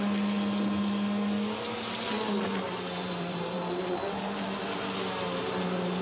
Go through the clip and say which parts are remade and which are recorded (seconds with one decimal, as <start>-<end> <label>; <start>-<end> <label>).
0.0-3.0 recorded; 3.0-4.4 remade; 4.4-6.0 recorded